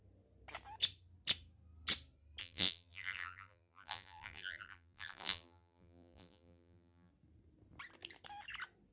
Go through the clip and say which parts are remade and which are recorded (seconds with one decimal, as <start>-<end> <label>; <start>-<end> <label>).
0.0-2.4 recorded; 2.4-7.1 remade; 7.1-8.9 recorded